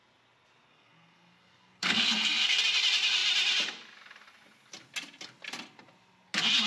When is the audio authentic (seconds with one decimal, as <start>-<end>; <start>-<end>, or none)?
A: 0.0-0.7; 2.6-6.7